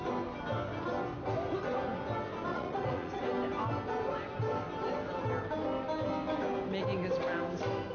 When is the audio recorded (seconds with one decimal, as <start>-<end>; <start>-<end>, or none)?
0.0-2.5; 3.2-7.9